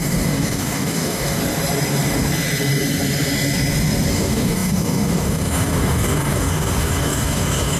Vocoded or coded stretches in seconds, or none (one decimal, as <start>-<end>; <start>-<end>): 0.0-1.4; 4.1-7.8